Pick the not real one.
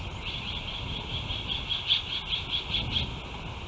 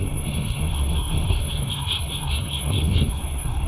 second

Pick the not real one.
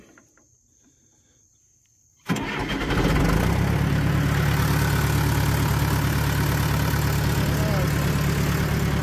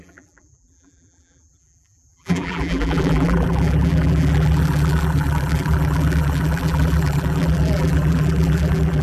second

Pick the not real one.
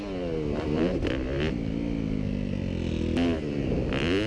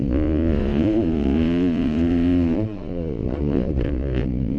second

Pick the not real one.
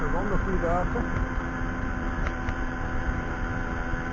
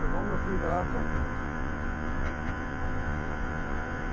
second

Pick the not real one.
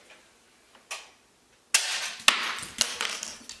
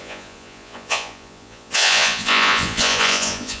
second